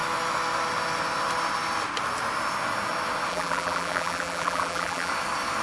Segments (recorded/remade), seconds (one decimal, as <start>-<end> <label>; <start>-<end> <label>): 0.0-3.3 recorded; 3.3-5.1 remade; 5.1-5.6 recorded